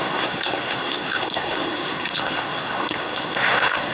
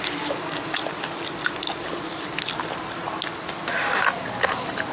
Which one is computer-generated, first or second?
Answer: first